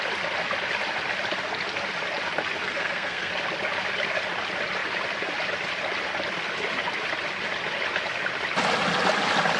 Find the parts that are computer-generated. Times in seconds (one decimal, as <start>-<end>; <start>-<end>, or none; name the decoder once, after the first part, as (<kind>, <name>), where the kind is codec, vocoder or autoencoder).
2.6-3.3 (codec, SNAC)

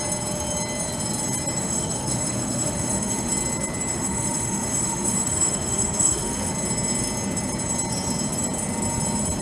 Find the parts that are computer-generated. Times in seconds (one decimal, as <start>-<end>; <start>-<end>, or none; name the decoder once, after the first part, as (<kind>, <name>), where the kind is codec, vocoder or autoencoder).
1.6-3.3 (autoencoder, DAC-VAE); 3.9-6.5

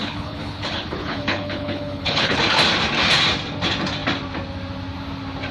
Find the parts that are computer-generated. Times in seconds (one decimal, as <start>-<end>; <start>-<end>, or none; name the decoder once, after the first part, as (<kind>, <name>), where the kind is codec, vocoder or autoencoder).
0.0-2.4 (codec, HILCodec)

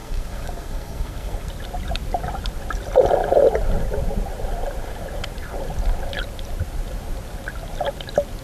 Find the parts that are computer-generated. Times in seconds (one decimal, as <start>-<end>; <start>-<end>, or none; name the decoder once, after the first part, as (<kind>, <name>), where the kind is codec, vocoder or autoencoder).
0.0-1.5 (codec, SNAC)

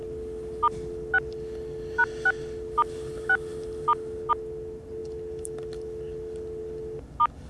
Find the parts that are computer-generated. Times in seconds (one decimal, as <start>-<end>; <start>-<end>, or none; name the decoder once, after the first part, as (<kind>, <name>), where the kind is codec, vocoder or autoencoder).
none